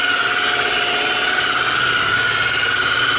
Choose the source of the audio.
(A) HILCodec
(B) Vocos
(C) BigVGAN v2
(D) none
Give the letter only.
D